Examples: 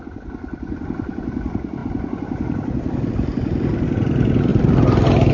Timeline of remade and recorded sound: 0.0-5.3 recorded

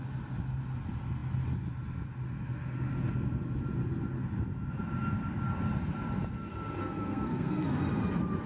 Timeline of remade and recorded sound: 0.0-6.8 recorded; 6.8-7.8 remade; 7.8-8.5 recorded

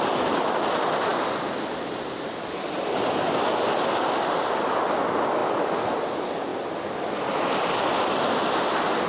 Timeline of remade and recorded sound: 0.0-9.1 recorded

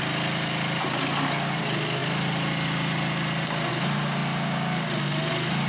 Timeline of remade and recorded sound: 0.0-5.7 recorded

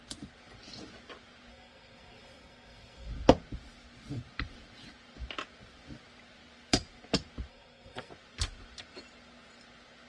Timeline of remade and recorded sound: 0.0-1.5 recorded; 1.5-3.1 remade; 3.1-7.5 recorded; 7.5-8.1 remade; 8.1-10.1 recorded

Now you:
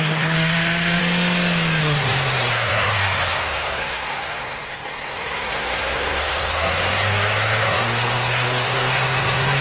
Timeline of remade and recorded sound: 0.0-1.0 remade; 1.0-1.8 recorded; 1.8-9.6 remade

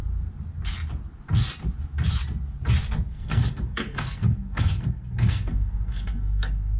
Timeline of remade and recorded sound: 0.0-3.1 recorded; 3.1-6.8 remade